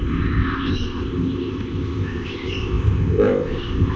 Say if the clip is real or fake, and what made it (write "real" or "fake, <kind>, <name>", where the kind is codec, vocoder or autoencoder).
fake, codec, ZipCodec